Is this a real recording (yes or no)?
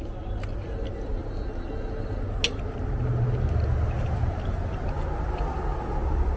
yes